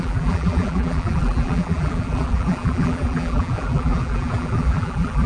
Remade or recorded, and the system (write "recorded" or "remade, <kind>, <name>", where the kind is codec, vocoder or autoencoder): remade, vocoder, BigVGAN v2